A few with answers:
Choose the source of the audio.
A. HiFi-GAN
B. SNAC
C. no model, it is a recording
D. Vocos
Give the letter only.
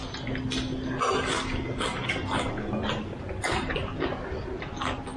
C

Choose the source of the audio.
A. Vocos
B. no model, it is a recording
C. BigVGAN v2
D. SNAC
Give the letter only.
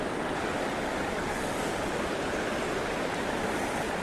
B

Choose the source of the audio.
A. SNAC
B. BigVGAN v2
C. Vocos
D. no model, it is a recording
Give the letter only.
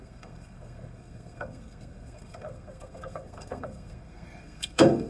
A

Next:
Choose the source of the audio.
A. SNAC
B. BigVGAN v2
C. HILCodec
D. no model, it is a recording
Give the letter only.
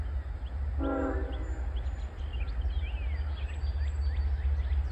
D